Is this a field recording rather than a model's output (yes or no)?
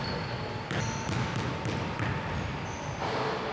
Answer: yes